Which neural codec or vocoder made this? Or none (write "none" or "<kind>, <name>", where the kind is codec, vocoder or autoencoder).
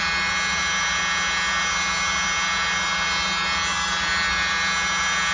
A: none